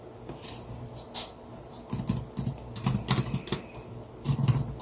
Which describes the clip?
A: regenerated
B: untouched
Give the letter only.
B